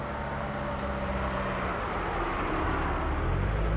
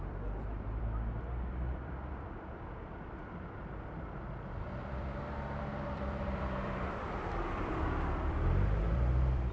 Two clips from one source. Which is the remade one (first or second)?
second